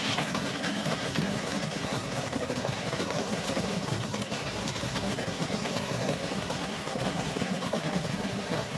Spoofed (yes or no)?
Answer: yes